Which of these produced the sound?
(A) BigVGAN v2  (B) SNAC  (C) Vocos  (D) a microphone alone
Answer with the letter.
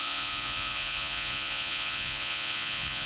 C